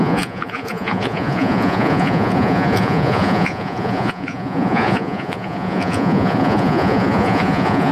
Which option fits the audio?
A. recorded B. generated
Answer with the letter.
B